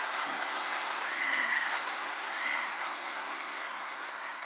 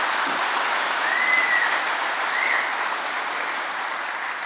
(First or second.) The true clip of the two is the second